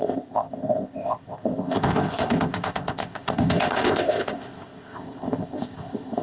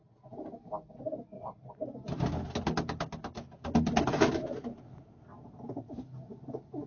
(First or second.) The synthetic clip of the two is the first